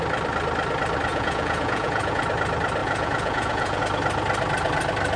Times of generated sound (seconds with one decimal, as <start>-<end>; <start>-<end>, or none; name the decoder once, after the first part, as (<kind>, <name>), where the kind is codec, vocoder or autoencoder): 1.1-2.2 (vocoder, Vocos); 2.8-3.8